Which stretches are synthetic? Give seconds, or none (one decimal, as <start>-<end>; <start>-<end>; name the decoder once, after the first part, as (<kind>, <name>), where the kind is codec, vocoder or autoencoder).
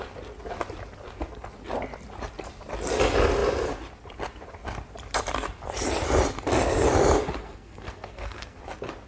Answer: 7.4-8.6 (codec, SNAC)